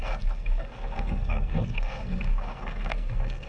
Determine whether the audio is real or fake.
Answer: fake